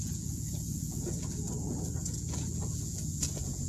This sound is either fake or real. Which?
fake